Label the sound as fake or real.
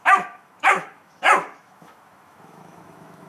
fake